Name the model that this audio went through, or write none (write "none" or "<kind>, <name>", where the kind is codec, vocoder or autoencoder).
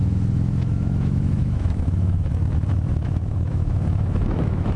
autoencoder, DAC-VAE